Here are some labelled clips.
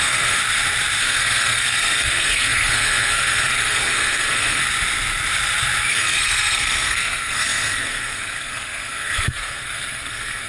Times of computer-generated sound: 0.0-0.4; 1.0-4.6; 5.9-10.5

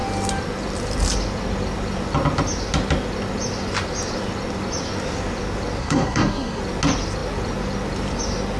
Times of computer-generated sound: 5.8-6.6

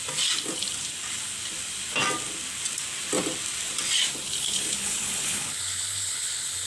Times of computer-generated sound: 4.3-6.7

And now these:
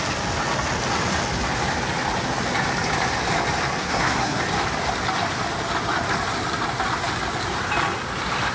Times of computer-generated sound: 3.8-4.4